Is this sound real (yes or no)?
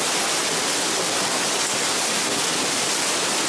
yes